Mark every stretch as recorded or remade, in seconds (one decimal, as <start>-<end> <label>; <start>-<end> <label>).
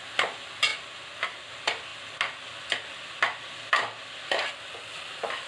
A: 0.0-5.5 recorded